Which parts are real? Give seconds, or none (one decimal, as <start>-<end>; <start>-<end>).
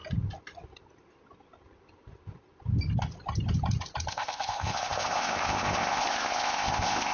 0.0-4.1